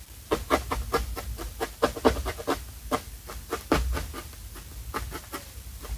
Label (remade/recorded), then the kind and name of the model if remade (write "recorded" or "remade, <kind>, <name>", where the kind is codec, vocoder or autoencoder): recorded